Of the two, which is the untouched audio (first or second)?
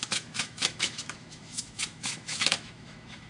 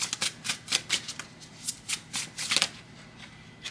second